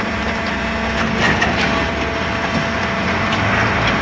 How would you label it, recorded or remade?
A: recorded